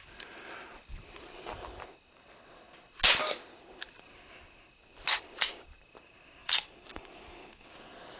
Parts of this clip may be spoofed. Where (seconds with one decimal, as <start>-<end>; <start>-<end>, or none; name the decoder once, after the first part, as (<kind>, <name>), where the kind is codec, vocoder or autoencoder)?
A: 6.4-7.7 (codec, DAC)